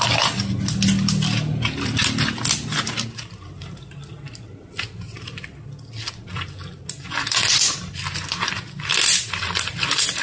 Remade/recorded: recorded